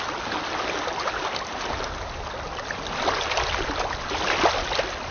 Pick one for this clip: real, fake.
real